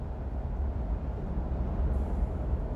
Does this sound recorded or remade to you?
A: recorded